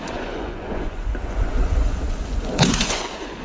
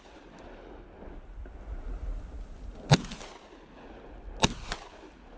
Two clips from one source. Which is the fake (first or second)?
first